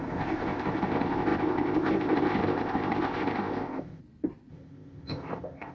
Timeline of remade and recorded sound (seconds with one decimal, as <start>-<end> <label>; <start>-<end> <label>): 0.0-4.0 remade; 4.0-4.5 recorded; 4.5-5.7 remade

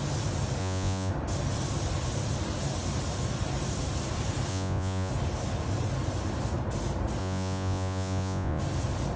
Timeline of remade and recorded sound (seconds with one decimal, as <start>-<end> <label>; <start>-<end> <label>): 0.0-0.6 recorded; 0.6-1.1 remade; 1.1-4.5 recorded; 4.5-5.1 remade; 5.1-7.2 recorded; 7.2-8.6 remade; 8.6-9.2 recorded

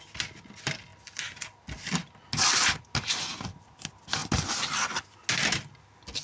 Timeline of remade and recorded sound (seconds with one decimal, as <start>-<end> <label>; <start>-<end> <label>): 0.0-6.2 recorded

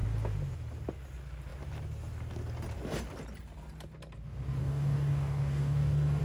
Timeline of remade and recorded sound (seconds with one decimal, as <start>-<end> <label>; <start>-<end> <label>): 0.0-4.6 recorded; 4.6-6.2 remade

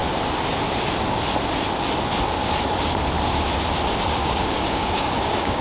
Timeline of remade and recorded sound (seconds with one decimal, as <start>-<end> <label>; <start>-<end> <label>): 0.0-4.2 recorded; 4.2-5.6 remade